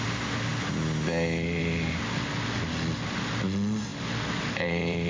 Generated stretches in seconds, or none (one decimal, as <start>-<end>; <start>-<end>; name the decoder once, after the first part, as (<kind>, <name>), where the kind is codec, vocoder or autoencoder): 3.9-5.1 (vocoder, BigVGAN v2)